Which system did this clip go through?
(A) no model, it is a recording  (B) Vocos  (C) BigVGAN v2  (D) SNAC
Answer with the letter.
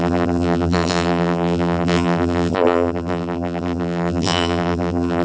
C